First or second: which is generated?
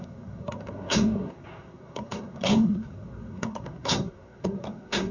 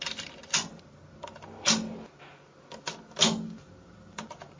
first